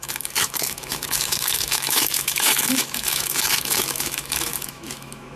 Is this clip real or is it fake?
fake